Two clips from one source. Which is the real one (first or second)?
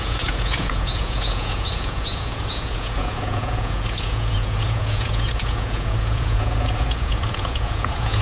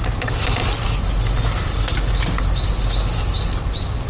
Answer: second